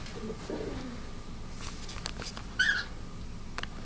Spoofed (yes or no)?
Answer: no